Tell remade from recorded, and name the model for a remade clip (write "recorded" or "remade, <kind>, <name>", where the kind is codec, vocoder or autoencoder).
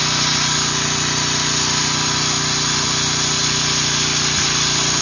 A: recorded